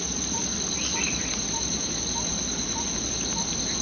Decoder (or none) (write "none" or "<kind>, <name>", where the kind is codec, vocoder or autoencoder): none